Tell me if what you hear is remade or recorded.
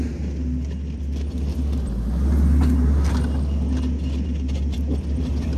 recorded